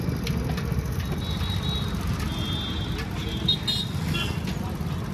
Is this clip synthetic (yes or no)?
no